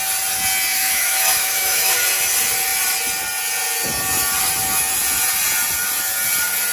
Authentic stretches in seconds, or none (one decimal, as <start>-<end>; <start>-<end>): 0.0-0.7; 1.9-6.7